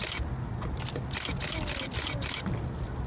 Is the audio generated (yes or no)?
no